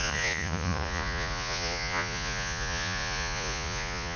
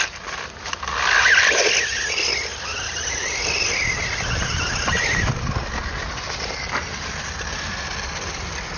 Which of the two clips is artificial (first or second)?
first